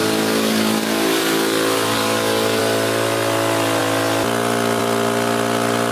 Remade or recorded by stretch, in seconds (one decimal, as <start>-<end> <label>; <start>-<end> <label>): 0.0-2.6 remade; 2.6-5.9 recorded